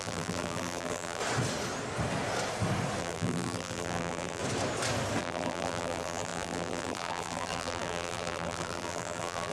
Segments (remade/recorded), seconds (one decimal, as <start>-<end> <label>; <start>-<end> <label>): 0.0-1.2 remade; 1.2-3.0 recorded; 3.0-4.4 remade; 4.4-5.2 recorded; 5.2-9.5 remade